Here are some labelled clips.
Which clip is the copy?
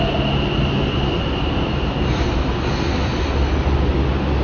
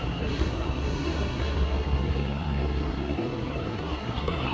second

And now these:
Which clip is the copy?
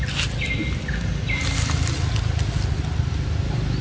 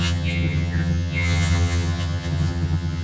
second